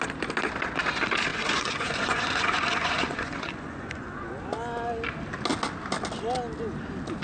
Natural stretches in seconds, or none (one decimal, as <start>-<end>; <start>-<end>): 0.0-1.3; 4.3-7.2